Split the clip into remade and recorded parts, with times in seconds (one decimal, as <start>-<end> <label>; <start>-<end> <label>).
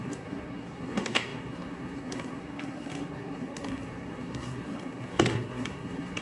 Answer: 0.0-6.2 remade